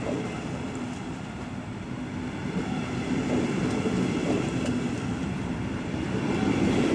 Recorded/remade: recorded